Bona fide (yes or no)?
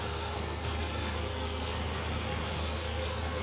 no